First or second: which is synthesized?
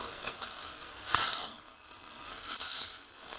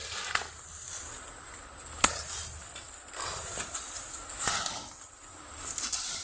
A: first